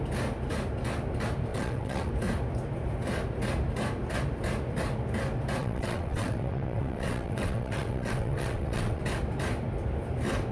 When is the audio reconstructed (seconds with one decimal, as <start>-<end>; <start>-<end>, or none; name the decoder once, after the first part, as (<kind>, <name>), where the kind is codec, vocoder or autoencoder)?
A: 1.5-2.1 (vocoder, WaveNeXt); 5.6-9.0